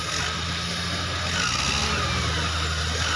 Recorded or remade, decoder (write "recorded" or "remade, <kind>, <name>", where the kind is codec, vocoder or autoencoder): recorded